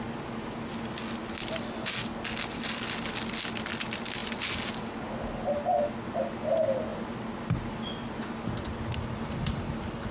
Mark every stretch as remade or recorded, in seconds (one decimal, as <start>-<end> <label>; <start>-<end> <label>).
0.0-10.1 recorded